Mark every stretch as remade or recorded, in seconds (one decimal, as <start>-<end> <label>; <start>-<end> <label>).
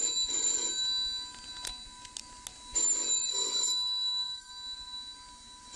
0.0-3.3 recorded; 3.3-4.5 remade; 4.5-5.8 recorded